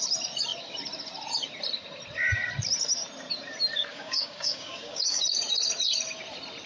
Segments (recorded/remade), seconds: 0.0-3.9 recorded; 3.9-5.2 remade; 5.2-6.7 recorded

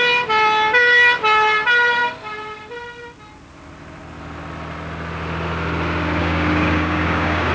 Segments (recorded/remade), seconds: 0.0-6.2 recorded; 6.2-7.5 remade

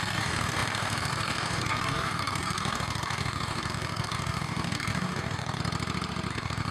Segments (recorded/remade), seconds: 0.0-5.6 remade; 5.6-6.3 recorded; 6.3-6.7 remade

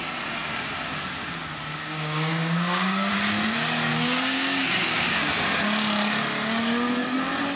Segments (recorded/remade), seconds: 0.0-1.7 recorded; 1.7-3.1 remade; 3.1-3.9 recorded; 3.9-5.2 remade; 5.2-7.6 recorded